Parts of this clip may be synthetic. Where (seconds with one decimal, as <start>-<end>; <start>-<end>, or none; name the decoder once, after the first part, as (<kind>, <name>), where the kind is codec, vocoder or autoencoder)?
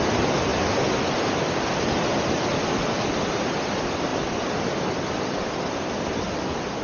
4.1-4.8 (vocoder, BigVGAN v2)